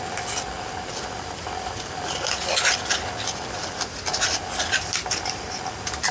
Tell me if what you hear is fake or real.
real